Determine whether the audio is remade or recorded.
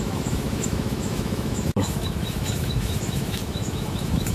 remade